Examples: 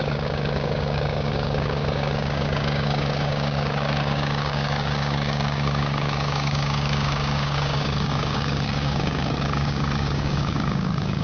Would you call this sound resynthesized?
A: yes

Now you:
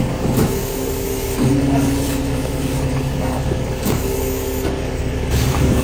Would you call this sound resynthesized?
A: yes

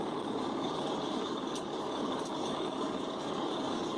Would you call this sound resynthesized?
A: yes